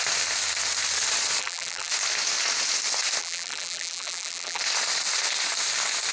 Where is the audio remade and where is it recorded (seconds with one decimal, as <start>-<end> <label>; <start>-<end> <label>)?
0.0-1.4 recorded; 1.4-1.9 remade; 1.9-3.2 recorded; 3.2-4.6 remade; 4.6-6.1 recorded